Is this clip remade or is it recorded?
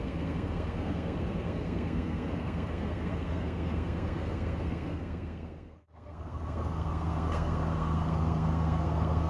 remade